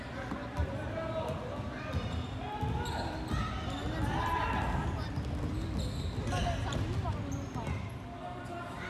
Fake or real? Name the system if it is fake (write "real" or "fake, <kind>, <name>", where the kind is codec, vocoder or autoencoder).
real